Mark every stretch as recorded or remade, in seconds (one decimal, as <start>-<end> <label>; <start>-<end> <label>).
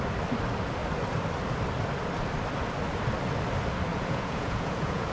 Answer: 0.0-3.9 recorded; 3.9-5.1 remade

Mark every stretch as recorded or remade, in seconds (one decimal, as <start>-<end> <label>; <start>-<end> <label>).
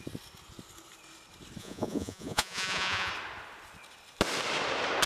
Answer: 0.0-1.6 recorded; 1.6-3.1 remade; 3.1-5.1 recorded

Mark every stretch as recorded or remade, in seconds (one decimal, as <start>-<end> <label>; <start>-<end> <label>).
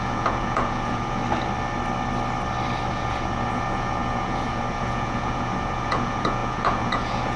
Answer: 0.0-1.2 remade; 1.2-2.9 recorded; 2.9-7.4 remade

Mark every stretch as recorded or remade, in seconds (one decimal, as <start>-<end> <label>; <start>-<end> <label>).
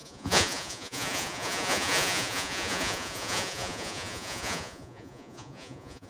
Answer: 0.0-6.1 remade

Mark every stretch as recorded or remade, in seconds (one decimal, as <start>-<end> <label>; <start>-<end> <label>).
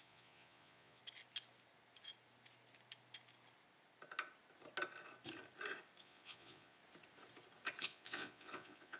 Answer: 0.0-1.0 remade; 1.0-6.0 recorded; 6.0-6.8 remade; 6.8-7.8 recorded; 7.8-9.0 remade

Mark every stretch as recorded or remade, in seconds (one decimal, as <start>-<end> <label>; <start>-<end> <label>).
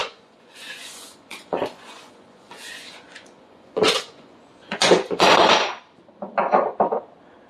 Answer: 0.0-5.7 remade; 5.7-7.5 recorded